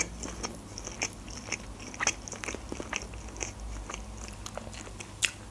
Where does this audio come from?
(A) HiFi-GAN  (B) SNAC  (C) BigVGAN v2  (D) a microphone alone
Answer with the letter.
D